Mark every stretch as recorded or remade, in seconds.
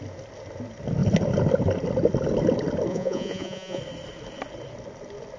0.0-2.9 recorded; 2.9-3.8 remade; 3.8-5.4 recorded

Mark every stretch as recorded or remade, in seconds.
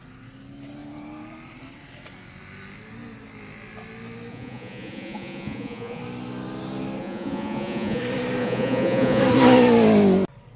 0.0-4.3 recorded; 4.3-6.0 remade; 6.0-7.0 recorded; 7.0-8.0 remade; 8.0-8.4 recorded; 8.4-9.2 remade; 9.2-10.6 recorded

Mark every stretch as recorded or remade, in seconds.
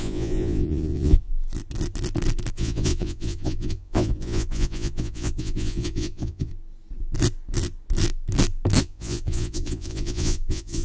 0.0-1.3 remade; 1.3-2.5 recorded; 2.5-6.5 remade; 6.5-8.8 recorded; 8.8-10.8 remade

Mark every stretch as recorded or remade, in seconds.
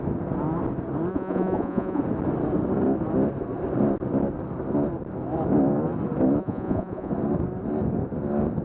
0.0-1.1 recorded; 1.1-2.0 remade; 2.0-6.4 recorded; 6.4-7.1 remade; 7.1-8.6 recorded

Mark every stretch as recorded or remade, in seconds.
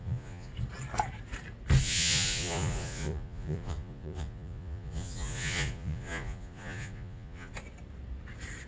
0.0-0.5 remade; 0.5-1.8 recorded; 1.8-7.5 remade; 7.5-8.7 recorded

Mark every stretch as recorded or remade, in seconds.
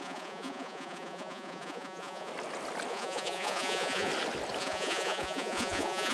0.0-2.3 remade; 2.3-2.9 recorded; 2.9-4.1 remade; 4.1-4.6 recorded; 4.6-6.1 remade